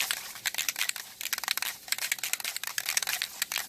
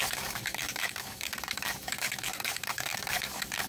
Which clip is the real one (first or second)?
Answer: first